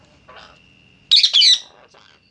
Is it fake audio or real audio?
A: real